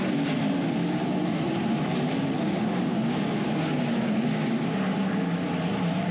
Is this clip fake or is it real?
real